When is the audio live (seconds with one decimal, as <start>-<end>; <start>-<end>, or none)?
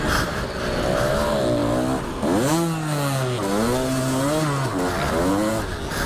0.0-6.1